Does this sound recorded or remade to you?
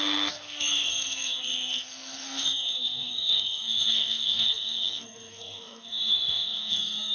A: remade